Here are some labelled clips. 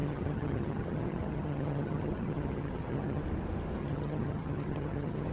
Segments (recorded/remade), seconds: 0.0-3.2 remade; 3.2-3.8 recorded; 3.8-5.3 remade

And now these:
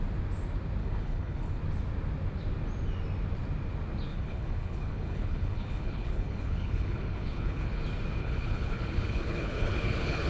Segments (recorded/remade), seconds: 0.0-0.8 recorded; 0.8-1.6 remade; 1.6-4.1 recorded; 4.1-7.8 remade; 7.8-8.2 recorded; 8.2-10.3 remade

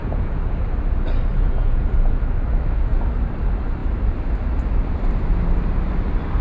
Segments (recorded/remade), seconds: 0.0-0.6 remade; 0.6-1.3 recorded; 1.3-1.9 remade; 1.9-6.4 recorded

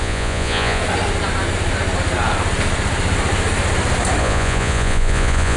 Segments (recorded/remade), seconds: 0.0-0.8 remade; 0.8-4.2 recorded; 4.2-5.6 remade

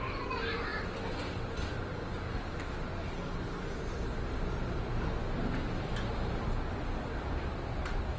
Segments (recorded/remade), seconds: 0.0-8.2 recorded

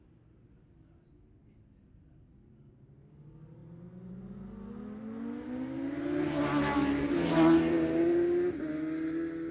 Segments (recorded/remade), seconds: 0.0-9.5 recorded

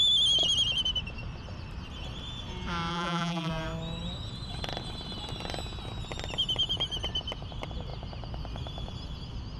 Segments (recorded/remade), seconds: 0.0-2.9 recorded; 2.9-3.5 remade; 3.5-9.6 recorded

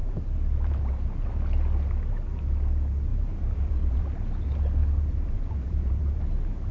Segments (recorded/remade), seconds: 0.0-1.3 remade; 1.3-3.1 recorded; 3.1-4.0 remade; 4.0-4.8 recorded; 4.8-6.2 remade; 6.2-6.7 recorded